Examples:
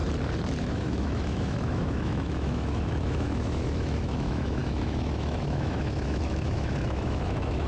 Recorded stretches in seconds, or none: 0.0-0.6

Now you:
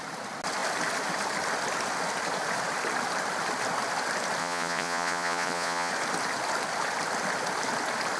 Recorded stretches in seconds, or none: 0.0-4.4; 5.9-8.2

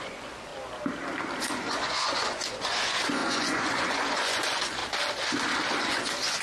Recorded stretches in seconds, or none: 0.5-1.4; 4.8-5.8

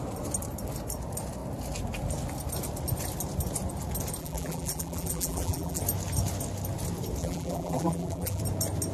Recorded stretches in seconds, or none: 0.0-4.2; 5.8-7.2; 8.4-8.9

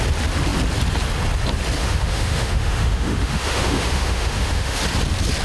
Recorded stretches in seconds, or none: 0.0-1.8; 4.8-5.4

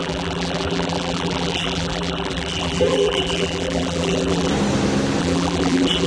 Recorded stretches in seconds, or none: 4.5-5.2

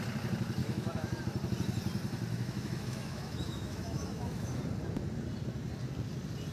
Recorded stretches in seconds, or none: 0.0-0.6; 1.2-2.3; 4.6-6.5